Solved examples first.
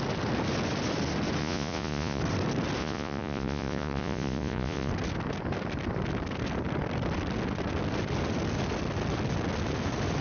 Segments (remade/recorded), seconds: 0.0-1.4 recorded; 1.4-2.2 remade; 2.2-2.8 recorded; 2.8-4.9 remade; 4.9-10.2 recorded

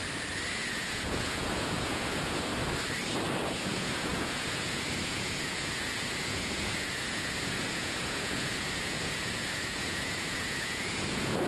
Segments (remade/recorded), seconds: 0.0-0.5 recorded; 0.5-2.5 remade; 2.5-3.5 recorded; 3.5-11.5 remade

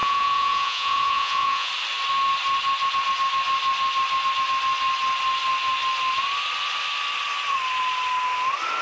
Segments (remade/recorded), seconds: 0.0-1.7 remade; 1.7-8.8 recorded

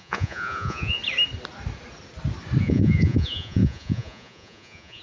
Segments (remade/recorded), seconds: 0.0-1.0 remade; 1.0-2.6 recorded; 2.6-5.0 remade

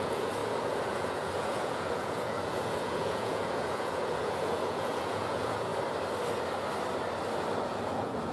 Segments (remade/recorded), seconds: 0.0-5.7 remade; 5.7-7.6 recorded; 7.6-8.3 remade

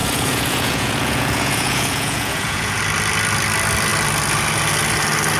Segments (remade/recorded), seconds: 0.0-2.8 remade; 2.8-5.4 recorded